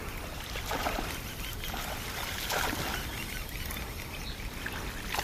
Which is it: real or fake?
real